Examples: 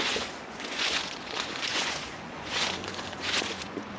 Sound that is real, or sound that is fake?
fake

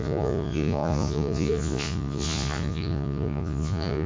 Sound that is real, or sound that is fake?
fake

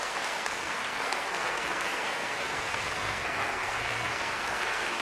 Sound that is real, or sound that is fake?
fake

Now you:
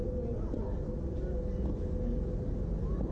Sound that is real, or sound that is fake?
real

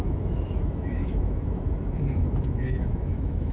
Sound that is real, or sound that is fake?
fake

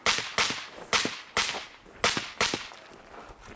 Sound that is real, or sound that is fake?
real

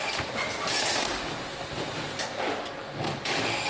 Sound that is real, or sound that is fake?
real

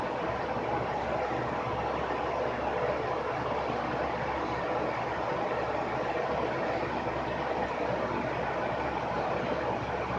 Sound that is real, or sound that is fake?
real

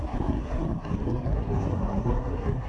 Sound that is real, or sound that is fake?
fake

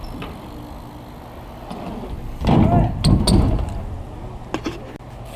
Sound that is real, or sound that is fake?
real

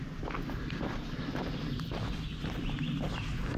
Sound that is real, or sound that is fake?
real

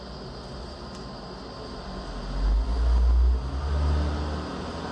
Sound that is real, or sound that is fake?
real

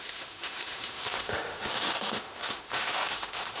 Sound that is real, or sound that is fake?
fake